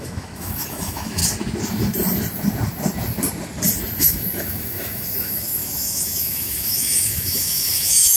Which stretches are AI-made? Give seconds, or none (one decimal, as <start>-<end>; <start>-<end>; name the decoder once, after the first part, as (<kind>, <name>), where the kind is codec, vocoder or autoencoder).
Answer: 0.0-1.2 (autoencoder, DAC-VAE); 4.0-8.2